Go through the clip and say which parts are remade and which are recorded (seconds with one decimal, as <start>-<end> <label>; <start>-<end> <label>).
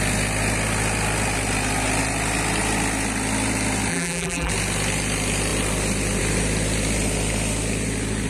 0.0-3.9 recorded; 3.9-4.5 remade; 4.5-8.3 recorded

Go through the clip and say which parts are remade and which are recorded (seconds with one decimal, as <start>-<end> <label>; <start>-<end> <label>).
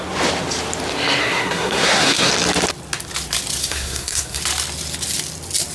0.0-1.2 recorded; 1.2-2.3 remade; 2.3-3.6 recorded; 3.6-4.4 remade; 4.4-5.7 recorded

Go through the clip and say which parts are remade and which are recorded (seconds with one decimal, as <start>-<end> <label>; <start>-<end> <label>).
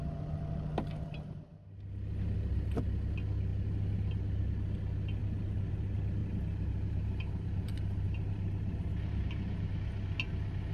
0.0-5.2 recorded; 5.2-5.7 remade; 5.7-6.2 recorded; 6.2-9.7 remade; 9.7-10.7 recorded